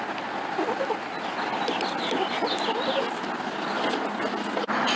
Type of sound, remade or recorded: recorded